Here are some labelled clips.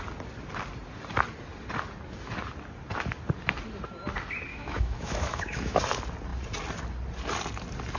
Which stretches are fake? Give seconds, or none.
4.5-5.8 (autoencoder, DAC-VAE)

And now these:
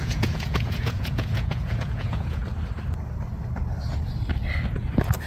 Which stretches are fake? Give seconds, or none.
0.0-2.4 (vocoder, Vocos)